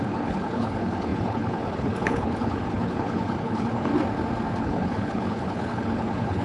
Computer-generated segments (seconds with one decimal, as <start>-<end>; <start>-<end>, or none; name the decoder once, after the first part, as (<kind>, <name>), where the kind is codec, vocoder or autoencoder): 0.0-3.9 (codec, HILCodec); 4.6-6.4